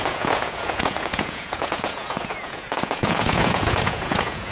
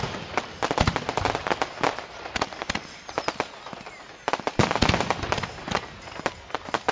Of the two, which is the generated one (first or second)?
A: first